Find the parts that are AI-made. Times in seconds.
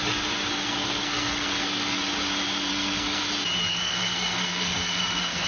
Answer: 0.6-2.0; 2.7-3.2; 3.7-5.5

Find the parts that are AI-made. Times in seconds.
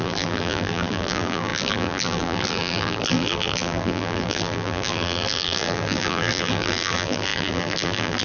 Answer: 0.0-8.2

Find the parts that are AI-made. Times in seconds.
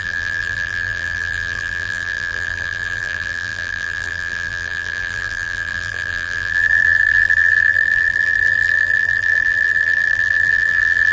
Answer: 0.0-11.1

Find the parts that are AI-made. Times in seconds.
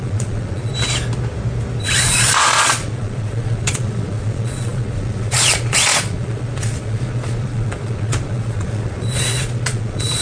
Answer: 0.0-0.7; 1.8-10.2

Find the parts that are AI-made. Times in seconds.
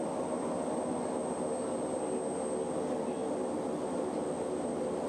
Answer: none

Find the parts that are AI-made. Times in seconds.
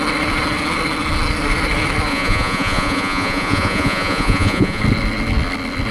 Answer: 2.1-4.8